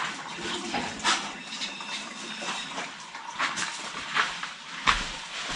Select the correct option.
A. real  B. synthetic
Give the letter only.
B